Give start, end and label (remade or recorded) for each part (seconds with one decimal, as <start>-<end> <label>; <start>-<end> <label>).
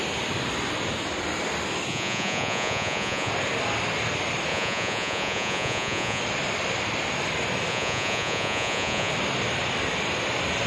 0.0-1.9 recorded; 1.9-3.3 remade; 3.3-4.5 recorded; 4.5-6.2 remade; 6.2-7.7 recorded; 7.7-9.1 remade; 9.1-10.7 recorded